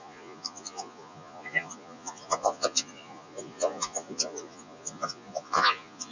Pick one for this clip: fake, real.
fake